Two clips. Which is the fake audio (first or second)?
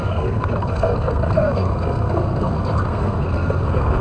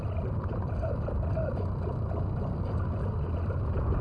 first